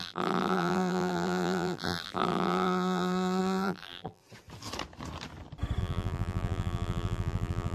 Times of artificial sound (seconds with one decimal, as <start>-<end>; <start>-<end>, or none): 0.0-4.2; 5.8-7.7